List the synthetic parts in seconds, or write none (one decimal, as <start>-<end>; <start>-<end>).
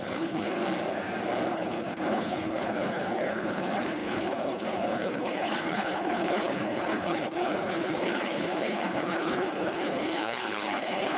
0.0-0.6; 1.5-11.2